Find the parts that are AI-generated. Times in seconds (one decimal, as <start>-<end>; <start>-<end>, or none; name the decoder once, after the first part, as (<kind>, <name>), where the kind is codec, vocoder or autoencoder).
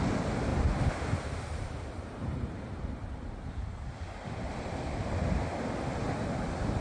0.5-4.6 (vocoder, BigVGAN v2)